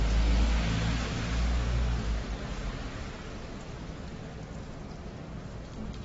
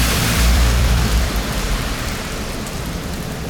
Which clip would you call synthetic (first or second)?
second